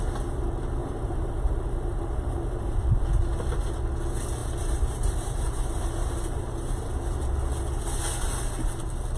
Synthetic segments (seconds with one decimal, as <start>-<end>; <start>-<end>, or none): 0.8-2.8; 4.4-6.9